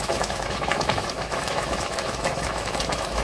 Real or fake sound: fake